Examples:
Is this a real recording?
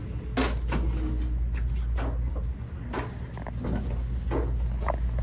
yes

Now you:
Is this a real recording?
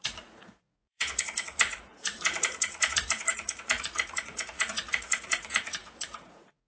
no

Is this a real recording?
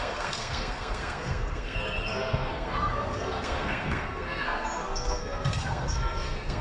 no